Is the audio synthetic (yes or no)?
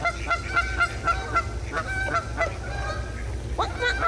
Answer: no